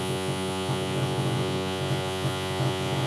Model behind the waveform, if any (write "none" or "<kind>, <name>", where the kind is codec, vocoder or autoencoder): vocoder, Vocos